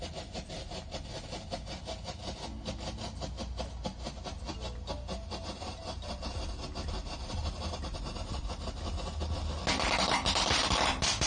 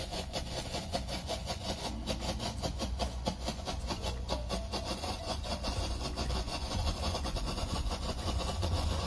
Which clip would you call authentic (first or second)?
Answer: first